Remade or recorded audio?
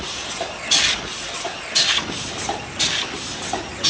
recorded